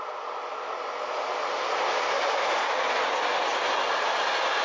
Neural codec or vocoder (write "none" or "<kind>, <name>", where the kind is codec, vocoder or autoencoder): none